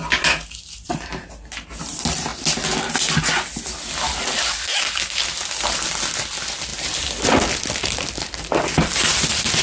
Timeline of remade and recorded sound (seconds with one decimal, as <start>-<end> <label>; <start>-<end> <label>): 0.0-9.6 recorded